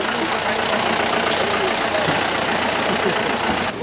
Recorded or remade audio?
recorded